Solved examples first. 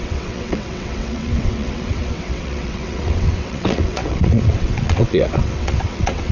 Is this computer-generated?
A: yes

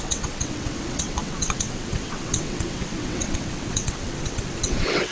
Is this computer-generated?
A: yes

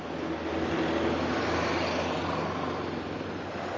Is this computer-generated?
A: no